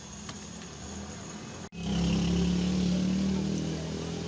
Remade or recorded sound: recorded